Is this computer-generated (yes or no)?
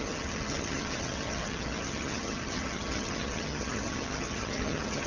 yes